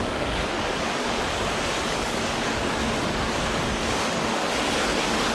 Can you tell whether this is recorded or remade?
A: remade